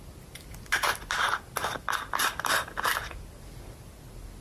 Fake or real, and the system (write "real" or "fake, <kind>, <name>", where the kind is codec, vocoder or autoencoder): real